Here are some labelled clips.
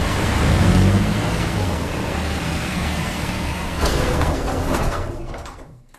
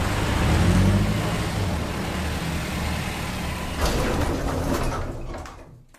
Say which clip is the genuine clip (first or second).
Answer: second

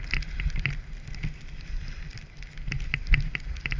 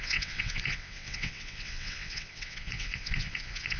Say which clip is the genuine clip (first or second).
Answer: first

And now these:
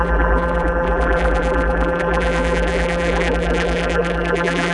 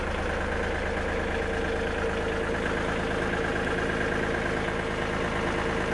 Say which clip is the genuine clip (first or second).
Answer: second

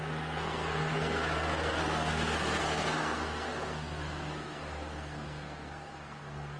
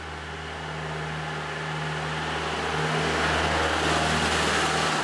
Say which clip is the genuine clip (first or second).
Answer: second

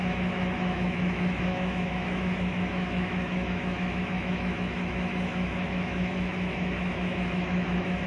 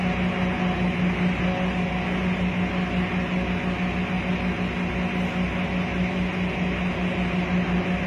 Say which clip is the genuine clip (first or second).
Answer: second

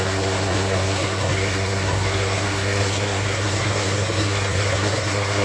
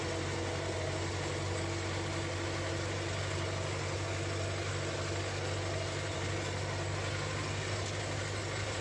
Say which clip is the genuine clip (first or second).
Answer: second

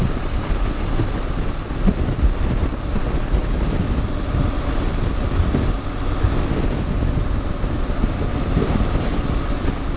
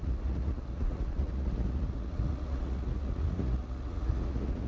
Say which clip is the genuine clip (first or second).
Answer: first